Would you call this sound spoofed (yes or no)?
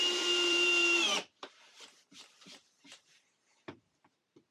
yes